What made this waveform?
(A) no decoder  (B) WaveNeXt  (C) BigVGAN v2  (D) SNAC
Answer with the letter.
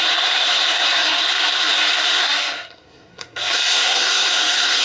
D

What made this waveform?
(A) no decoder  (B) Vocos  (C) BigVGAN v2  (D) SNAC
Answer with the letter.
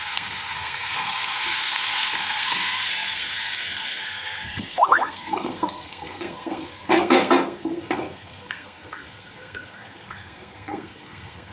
D